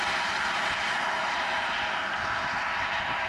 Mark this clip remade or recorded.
recorded